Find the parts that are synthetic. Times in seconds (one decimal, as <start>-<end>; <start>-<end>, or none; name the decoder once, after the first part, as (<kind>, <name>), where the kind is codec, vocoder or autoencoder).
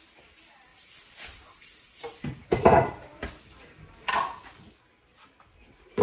0.7-4.1 (vocoder, BigVGAN v2)